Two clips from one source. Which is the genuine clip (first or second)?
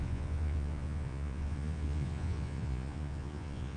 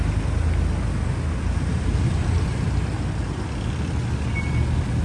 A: second